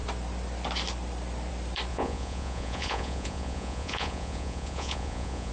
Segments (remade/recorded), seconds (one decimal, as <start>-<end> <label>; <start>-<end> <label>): 0.0-1.9 recorded; 1.9-5.5 remade